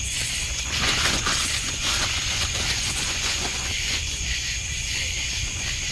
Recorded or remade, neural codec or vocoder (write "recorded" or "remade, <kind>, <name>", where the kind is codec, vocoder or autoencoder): remade, vocoder, Vocos